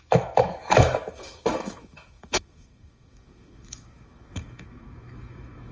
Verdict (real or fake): fake